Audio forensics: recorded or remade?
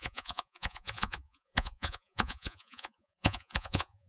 remade